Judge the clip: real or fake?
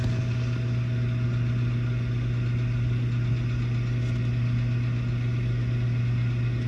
real